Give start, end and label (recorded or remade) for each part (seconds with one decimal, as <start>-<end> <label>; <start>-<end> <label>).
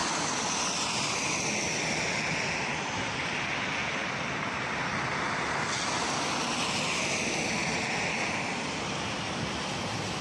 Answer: 0.0-10.2 recorded